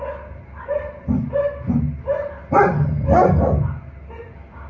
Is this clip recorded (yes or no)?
yes